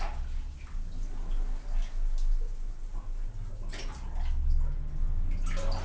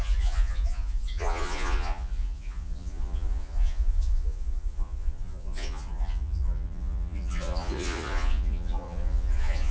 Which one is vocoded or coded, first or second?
second